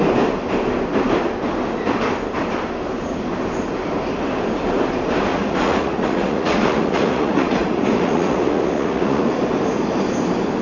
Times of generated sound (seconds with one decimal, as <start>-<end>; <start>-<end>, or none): 5.3-9.3